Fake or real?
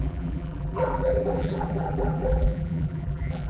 fake